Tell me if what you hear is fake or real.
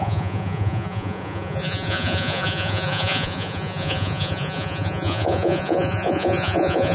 fake